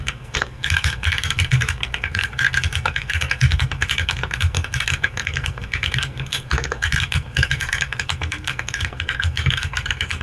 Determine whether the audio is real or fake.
fake